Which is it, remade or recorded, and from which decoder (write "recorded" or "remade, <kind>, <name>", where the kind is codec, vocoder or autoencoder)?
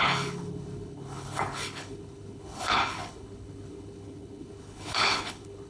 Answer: remade, codec, HILCodec